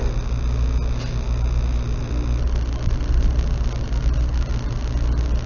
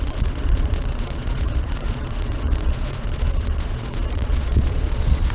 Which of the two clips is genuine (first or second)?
first